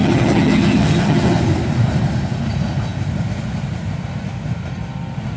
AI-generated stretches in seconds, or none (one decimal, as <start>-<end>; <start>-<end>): 0.0-1.4